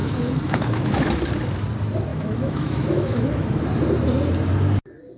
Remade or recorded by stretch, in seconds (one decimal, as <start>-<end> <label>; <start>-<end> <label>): 0.0-1.2 remade; 1.2-2.1 recorded; 2.1-3.6 remade; 3.6-5.2 recorded